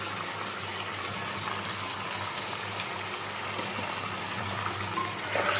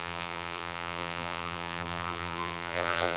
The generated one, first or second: second